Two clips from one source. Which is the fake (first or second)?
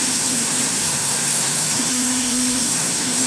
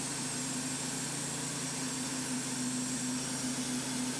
first